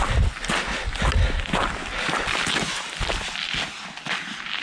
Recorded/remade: recorded